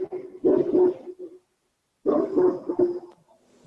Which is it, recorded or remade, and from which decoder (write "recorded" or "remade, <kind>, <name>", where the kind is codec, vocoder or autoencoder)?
recorded